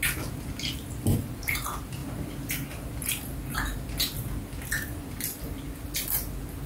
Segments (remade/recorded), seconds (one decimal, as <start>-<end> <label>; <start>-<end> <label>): 0.0-6.7 recorded